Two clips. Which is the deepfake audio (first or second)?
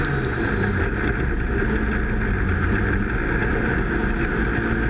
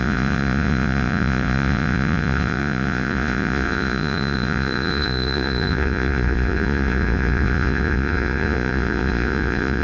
second